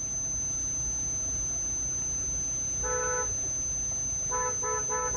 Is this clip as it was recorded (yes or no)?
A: yes